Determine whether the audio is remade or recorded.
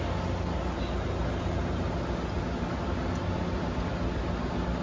recorded